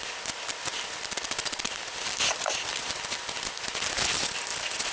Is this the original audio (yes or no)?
no